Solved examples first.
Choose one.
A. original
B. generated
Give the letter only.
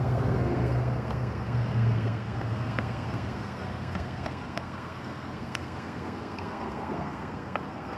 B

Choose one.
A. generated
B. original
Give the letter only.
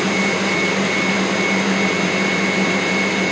B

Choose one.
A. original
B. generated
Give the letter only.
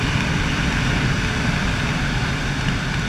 A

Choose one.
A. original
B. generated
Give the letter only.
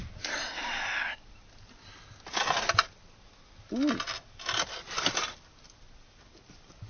A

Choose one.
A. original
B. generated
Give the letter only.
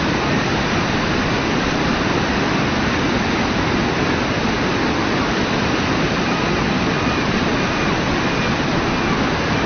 A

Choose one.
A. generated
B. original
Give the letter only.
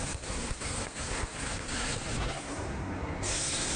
A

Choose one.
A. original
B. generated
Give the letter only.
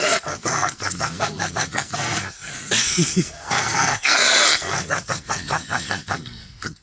B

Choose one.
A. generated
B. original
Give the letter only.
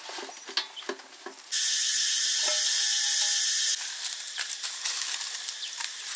B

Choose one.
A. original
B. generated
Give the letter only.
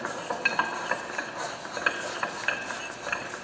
A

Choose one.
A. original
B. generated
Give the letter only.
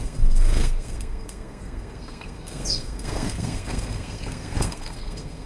B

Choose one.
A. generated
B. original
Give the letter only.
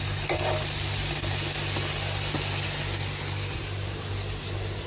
B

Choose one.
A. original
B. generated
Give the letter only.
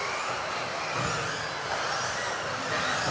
A